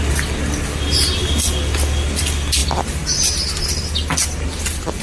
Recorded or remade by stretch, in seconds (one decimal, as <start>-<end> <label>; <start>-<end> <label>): 0.0-5.0 recorded